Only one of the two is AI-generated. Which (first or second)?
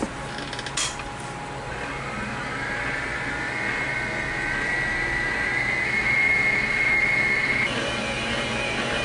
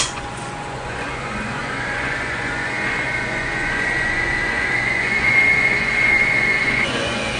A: second